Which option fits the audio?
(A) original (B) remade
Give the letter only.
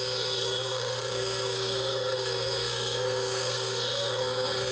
B